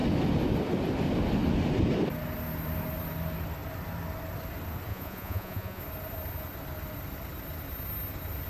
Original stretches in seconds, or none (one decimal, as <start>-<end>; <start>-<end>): 0.0-4.9; 5.8-8.5